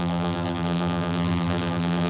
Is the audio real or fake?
fake